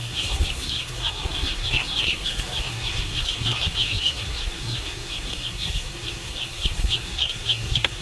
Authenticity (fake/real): fake